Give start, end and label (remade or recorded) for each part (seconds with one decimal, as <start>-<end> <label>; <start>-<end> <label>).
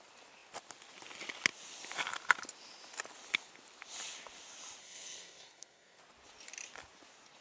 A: 0.0-4.8 recorded; 4.8-6.0 remade; 6.0-7.4 recorded